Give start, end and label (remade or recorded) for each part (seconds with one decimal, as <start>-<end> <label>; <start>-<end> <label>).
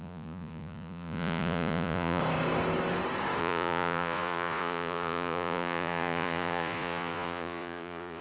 0.0-2.2 remade; 2.2-3.4 recorded; 3.4-8.2 remade